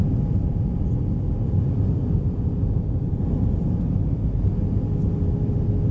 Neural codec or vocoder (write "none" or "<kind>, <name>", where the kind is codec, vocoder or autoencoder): none